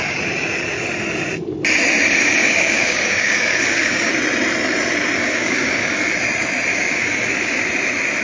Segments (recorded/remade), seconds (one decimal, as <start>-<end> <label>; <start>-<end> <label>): 0.0-2.4 recorded; 2.4-4.1 remade; 4.1-5.2 recorded; 5.2-6.1 remade; 6.1-6.7 recorded; 6.7-7.6 remade; 7.6-8.2 recorded

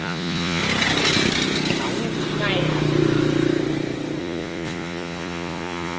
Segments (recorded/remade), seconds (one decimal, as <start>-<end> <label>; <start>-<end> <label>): 0.0-0.6 remade; 0.6-4.2 recorded; 4.2-6.0 remade

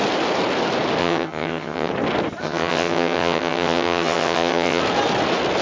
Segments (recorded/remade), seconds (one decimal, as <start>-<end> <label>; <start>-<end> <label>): 0.0-1.0 recorded; 1.0-1.9 remade; 1.9-2.4 recorded; 2.4-4.8 remade; 4.8-5.6 recorded

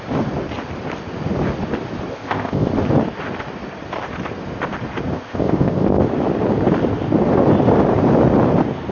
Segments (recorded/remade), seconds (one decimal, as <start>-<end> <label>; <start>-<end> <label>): 0.0-2.1 recorded; 2.1-2.7 remade; 2.7-5.1 recorded; 5.1-6.0 remade; 6.0-8.9 recorded

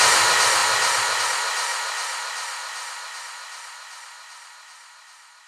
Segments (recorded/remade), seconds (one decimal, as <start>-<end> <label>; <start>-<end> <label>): 0.0-5.5 recorded

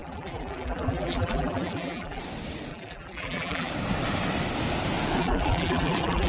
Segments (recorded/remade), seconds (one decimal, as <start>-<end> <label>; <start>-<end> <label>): 0.0-2.2 remade; 2.2-2.7 recorded; 2.7-3.7 remade; 3.7-5.2 recorded; 5.2-6.3 remade